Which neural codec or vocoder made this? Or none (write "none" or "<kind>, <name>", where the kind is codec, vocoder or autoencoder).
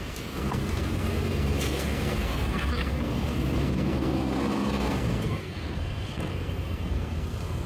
codec, SNAC